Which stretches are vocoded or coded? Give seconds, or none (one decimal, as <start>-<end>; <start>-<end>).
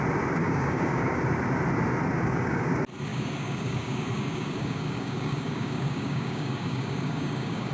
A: 0.4-1.2; 2.1-2.7; 3.1-7.7